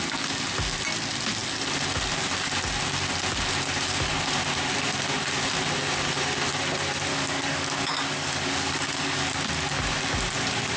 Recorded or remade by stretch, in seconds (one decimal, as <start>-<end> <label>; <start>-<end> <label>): 0.0-7.1 recorded; 7.1-9.3 remade; 9.3-10.8 recorded